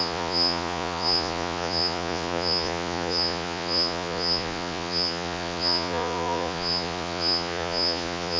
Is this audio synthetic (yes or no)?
yes